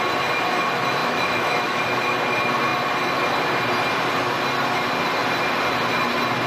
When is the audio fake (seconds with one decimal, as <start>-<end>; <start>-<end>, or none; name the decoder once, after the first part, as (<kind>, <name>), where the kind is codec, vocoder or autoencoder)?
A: 1.0-1.8 (autoencoder, DAC-VAE)